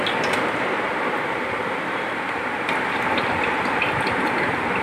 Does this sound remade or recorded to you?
recorded